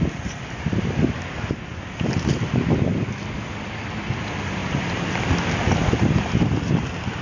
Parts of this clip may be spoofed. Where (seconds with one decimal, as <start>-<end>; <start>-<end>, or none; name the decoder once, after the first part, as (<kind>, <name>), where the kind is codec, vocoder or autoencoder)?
none